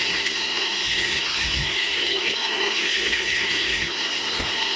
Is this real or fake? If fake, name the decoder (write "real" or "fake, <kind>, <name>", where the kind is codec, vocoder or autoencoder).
fake, codec, SNAC